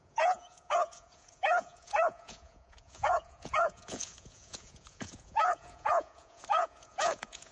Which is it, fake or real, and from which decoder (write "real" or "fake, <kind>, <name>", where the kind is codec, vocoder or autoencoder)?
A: fake, vocoder, Vocos